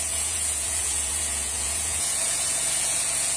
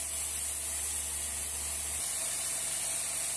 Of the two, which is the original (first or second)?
second